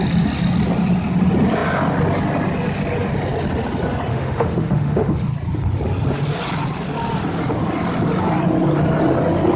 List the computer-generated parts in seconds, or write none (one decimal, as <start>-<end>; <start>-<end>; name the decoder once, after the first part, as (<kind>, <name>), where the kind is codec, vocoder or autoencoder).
4.1-5.3 (autoencoder, DAC-VAE)